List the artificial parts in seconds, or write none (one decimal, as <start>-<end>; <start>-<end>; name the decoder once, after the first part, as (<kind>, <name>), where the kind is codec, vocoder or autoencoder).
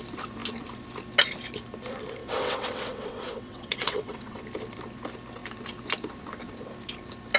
2.2-4.4 (vocoder, WaveNeXt)